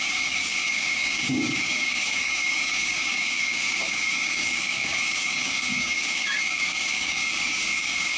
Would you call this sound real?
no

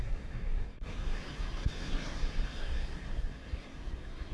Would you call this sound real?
no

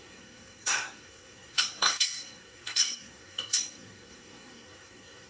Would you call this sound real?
no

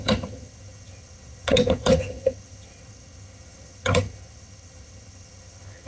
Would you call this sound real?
no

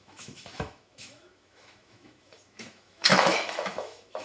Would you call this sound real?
no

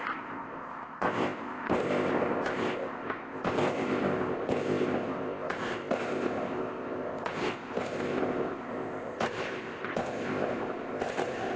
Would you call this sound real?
no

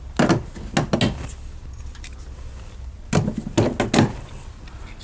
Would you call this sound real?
yes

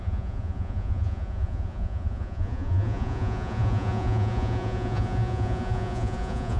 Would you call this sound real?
no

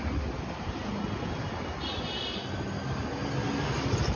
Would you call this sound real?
yes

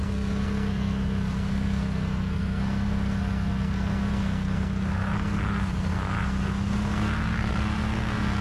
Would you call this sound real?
no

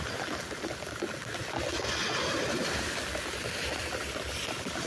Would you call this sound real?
yes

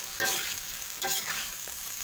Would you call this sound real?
no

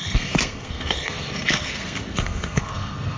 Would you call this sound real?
no